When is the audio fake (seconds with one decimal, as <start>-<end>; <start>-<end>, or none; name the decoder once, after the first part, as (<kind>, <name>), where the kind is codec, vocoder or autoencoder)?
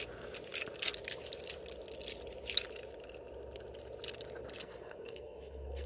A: 4.6-5.9 (codec, SNAC)